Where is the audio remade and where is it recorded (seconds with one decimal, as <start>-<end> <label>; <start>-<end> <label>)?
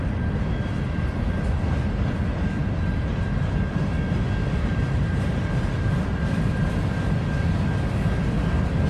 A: 0.0-2.6 recorded; 2.6-6.8 remade; 6.8-8.9 recorded